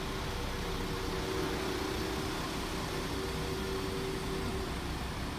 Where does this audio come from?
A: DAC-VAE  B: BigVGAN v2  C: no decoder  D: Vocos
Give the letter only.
C